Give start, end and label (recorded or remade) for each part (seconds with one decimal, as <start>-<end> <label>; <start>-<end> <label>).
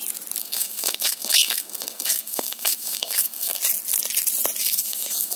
0.0-0.4 recorded; 0.4-3.6 remade; 3.6-4.6 recorded; 4.6-5.4 remade